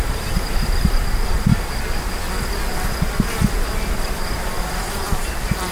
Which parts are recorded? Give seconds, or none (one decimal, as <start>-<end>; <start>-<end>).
1.4-4.8

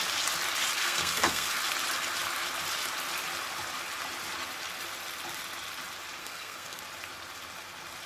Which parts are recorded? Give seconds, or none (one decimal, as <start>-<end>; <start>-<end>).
0.0-0.8; 1.5-6.2; 6.8-8.1

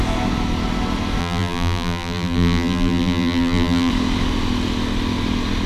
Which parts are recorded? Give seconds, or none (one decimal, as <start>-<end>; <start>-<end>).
0.0-1.2; 3.9-5.7

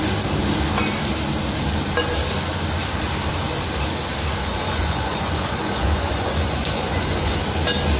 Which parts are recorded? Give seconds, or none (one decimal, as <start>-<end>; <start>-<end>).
0.0-4.4; 7.4-8.0

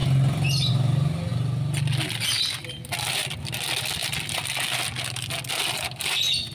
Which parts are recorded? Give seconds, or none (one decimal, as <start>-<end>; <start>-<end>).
0.0-6.5

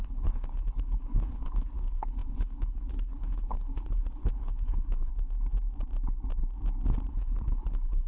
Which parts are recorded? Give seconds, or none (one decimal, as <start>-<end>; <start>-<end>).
5.1-7.1

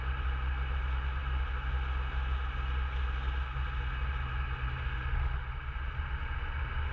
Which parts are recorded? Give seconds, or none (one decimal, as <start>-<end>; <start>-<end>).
0.0-6.9

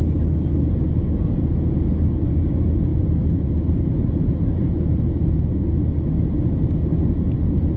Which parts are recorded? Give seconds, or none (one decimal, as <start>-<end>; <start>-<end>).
0.0-2.9; 5.2-7.8